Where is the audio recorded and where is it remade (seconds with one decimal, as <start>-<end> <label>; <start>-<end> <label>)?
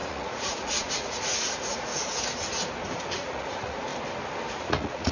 0.0-1.9 remade; 1.9-3.1 recorded; 3.1-3.9 remade; 3.9-4.5 recorded; 4.5-5.1 remade